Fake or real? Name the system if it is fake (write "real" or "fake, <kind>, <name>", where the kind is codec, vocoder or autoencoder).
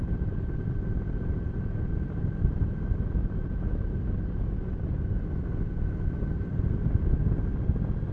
real